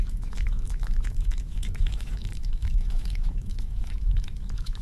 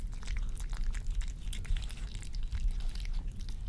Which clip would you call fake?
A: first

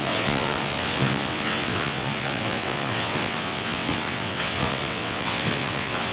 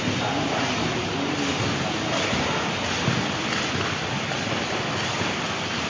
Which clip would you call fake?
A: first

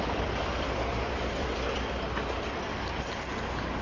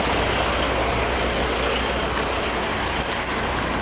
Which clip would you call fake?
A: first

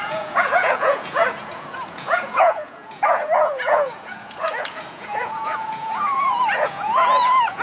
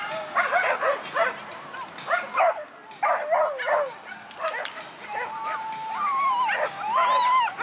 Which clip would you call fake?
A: first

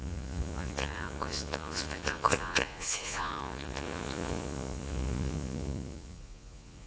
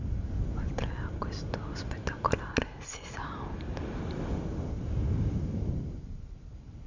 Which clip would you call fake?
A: first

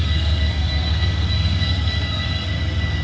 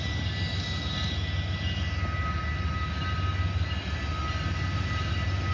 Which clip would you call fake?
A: first